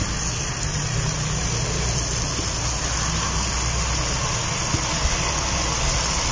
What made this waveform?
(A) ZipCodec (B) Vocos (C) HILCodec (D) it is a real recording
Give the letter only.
D